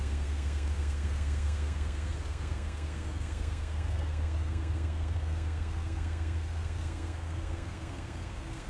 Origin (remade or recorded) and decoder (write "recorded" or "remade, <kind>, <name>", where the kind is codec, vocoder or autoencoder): remade, codec, SNAC